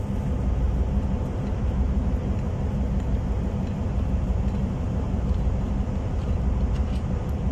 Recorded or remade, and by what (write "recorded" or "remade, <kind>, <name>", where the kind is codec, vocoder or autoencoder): remade, vocoder, BigVGAN v2